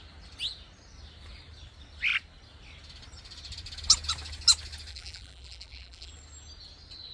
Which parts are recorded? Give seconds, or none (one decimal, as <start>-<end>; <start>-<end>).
0.0-4.9; 6.1-7.1